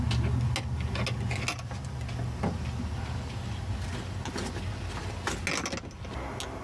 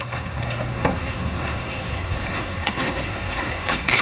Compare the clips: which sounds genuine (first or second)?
first